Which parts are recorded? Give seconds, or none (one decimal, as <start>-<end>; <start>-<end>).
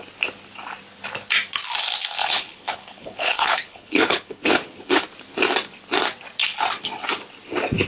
0.0-2.2; 5.0-7.9